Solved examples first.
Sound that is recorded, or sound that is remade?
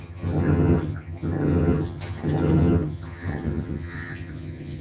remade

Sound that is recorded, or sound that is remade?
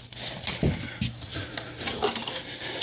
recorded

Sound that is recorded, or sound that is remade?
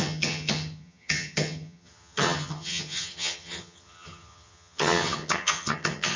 remade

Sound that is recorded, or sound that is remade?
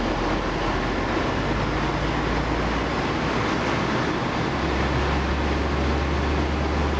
recorded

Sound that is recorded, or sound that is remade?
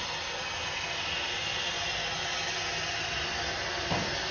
recorded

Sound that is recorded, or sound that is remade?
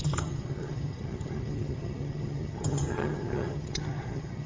remade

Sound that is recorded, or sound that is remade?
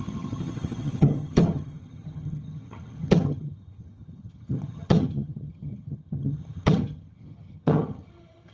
remade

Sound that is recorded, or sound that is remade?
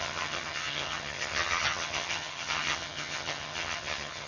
remade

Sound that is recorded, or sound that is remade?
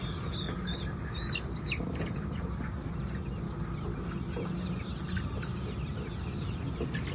recorded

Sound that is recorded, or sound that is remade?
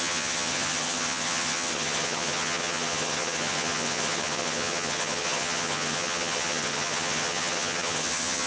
remade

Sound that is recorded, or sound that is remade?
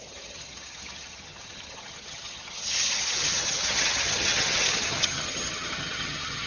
remade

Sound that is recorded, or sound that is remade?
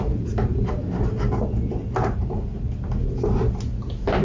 recorded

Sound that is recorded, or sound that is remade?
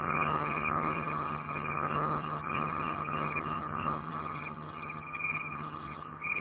remade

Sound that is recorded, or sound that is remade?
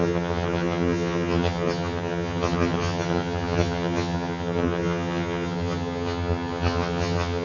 remade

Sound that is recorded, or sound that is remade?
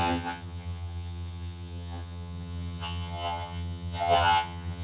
remade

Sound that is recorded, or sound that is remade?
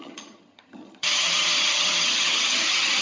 remade